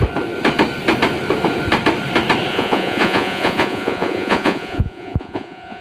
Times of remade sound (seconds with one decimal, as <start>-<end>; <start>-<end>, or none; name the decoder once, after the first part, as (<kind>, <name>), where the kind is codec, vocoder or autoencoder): 2.5-5.8 (vocoder, Vocos)